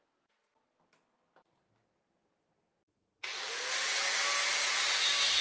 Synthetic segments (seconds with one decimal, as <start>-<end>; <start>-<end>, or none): none